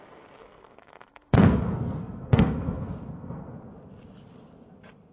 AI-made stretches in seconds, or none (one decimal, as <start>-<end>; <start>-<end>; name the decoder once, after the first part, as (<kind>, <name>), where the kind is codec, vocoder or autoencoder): 0.4-3.5 (codec, SNAC)